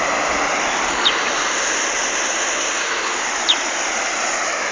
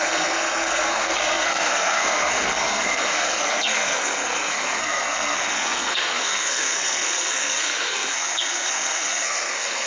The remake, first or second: second